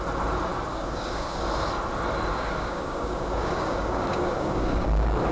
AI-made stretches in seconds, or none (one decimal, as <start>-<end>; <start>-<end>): 0.7-1.4; 2.3-5.3